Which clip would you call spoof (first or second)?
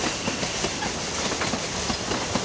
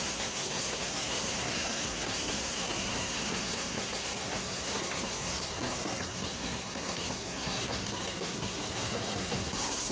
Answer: second